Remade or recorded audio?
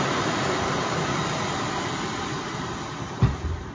remade